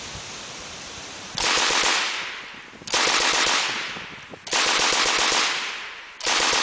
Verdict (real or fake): fake